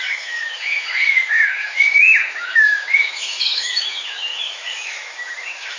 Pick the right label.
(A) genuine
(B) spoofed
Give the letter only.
B